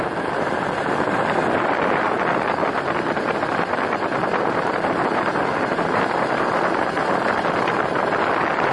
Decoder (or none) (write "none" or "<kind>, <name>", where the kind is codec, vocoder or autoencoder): vocoder, BigVGAN v2